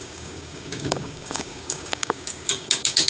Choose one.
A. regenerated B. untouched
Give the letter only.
A